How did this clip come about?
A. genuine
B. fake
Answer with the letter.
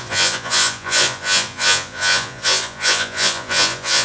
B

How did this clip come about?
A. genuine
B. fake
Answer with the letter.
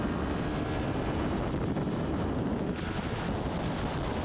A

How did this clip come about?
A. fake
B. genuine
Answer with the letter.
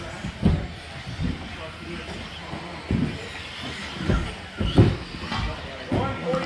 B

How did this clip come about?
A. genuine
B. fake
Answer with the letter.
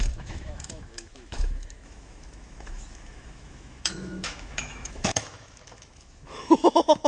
B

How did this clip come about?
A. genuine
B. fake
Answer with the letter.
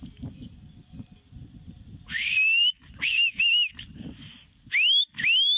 A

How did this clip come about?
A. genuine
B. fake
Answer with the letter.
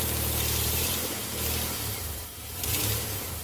B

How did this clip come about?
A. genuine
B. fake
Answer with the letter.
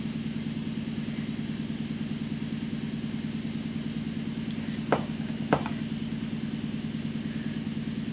A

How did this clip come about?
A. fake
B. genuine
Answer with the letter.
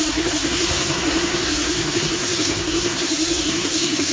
A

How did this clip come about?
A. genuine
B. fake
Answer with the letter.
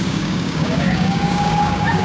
B